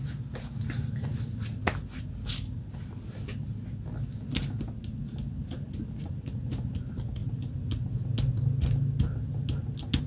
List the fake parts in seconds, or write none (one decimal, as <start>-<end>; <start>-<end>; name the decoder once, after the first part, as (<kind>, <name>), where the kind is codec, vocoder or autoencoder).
none